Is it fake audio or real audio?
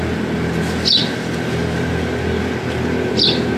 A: real